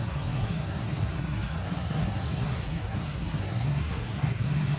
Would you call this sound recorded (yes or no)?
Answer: no